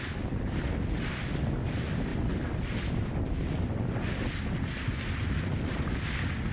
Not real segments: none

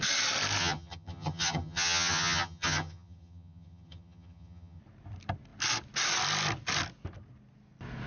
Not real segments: 0.6-4.8 (vocoder, HiFi-GAN)